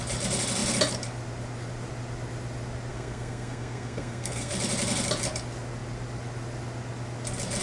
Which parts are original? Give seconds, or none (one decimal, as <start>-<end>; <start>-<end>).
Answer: 0.0-2.9; 4.5-7.6